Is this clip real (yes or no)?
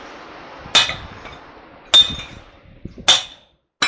yes